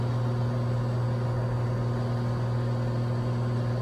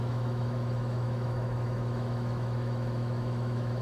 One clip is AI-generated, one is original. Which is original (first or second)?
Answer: first